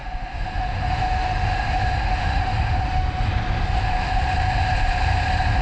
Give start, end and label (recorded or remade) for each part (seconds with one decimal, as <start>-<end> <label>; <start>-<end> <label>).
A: 0.0-3.3 remade; 3.3-5.6 recorded